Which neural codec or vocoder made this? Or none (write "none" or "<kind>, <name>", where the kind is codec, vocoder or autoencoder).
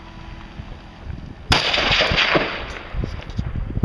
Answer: none